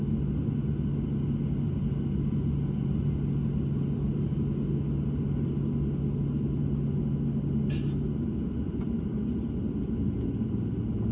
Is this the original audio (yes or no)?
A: yes